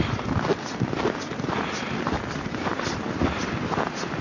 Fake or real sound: real